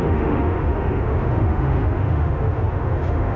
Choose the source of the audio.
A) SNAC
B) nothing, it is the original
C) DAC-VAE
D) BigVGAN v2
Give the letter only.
C